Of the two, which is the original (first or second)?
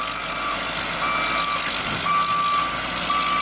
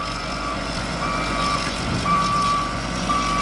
first